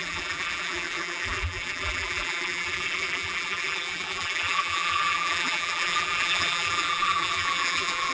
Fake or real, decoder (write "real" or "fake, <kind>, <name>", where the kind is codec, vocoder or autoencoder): fake, vocoder, BigVGAN v2